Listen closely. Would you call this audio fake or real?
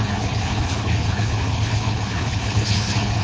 fake